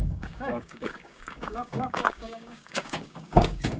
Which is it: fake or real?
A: fake